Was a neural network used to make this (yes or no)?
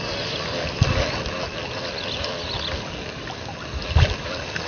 no